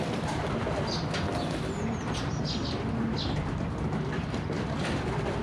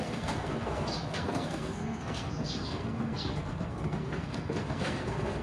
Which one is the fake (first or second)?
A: second